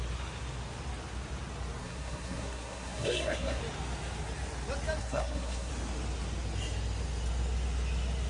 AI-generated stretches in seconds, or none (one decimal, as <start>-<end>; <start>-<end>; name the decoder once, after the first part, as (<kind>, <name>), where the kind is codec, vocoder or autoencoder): 1.8-3.6 (codec, SNAC); 5.0-5.7